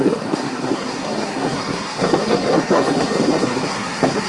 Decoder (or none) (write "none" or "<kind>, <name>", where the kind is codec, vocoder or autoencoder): codec, SNAC